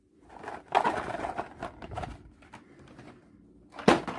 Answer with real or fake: real